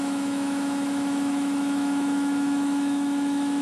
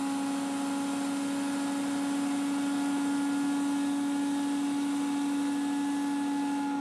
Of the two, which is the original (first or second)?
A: second